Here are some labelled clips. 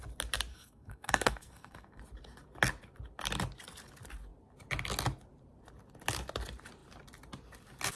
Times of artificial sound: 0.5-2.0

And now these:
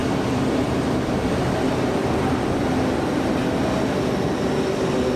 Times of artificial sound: none

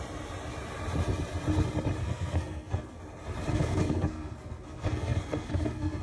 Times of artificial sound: 2.0-3.0; 3.5-6.0

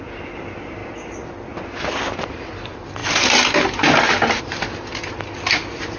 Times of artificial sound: none

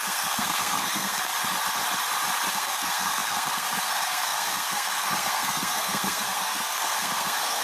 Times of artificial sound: 0.0-1.3; 2.5-7.6